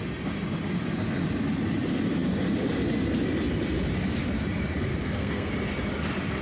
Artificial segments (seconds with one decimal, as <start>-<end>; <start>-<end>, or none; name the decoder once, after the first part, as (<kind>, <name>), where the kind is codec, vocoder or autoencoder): 4.9-5.5 (codec, SNAC)